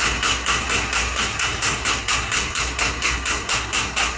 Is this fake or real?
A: fake